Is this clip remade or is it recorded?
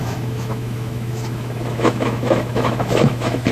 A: remade